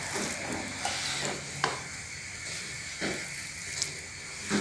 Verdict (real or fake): real